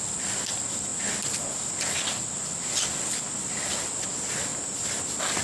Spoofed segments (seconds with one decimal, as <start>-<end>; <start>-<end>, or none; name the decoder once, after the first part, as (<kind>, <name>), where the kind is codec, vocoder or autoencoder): none